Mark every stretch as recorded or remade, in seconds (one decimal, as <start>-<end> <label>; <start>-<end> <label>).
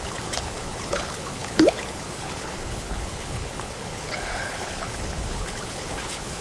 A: 0.0-6.4 remade